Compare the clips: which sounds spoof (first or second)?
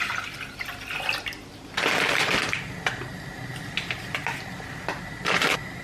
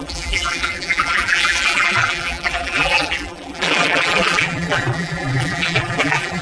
second